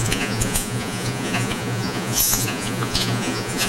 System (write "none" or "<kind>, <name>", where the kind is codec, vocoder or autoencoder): vocoder, Vocos